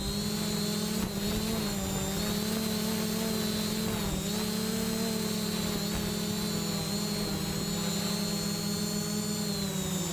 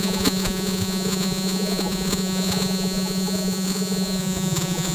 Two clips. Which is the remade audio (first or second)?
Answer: second